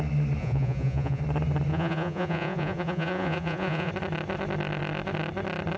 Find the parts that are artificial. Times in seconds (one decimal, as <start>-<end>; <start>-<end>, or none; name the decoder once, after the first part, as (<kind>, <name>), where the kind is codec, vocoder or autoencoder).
0.4-1.2 (vocoder, Vocos); 1.7-3.9